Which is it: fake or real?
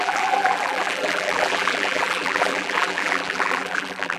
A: fake